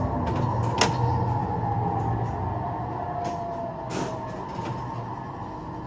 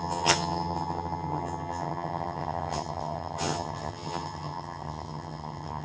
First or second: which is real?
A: first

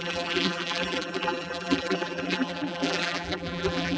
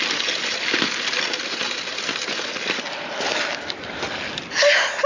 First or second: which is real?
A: second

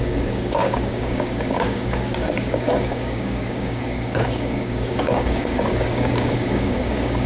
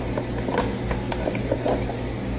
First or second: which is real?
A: second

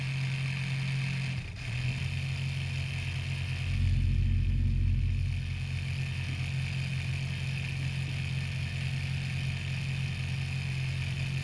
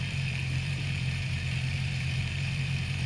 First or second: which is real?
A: first